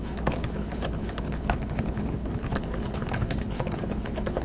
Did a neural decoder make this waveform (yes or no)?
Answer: yes